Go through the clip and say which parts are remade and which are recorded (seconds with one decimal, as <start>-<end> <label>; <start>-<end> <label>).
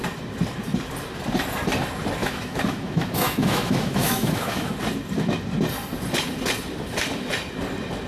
0.0-2.2 recorded; 2.2-4.7 remade; 4.7-8.1 recorded